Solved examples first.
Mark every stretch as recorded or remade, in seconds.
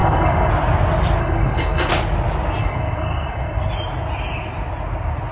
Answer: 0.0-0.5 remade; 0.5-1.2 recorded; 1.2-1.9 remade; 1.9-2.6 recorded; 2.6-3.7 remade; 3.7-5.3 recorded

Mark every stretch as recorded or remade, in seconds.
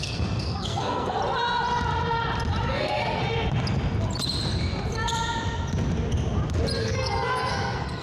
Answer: 0.0-1.2 remade; 1.2-2.7 recorded; 2.7-3.2 remade; 3.2-6.8 recorded; 6.8-8.0 remade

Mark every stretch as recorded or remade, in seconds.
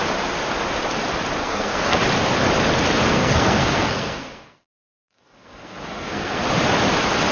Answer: 0.0-1.4 recorded; 1.4-2.0 remade; 2.0-3.1 recorded; 3.1-6.4 remade; 6.4-7.3 recorded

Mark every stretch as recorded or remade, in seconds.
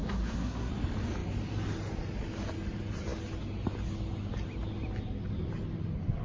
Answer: 0.0-0.7 remade; 0.7-6.2 recorded